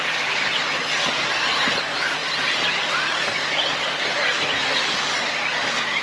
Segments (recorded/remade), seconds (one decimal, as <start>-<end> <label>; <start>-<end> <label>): 0.0-6.0 recorded